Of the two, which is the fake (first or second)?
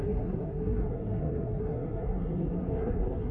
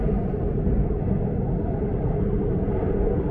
first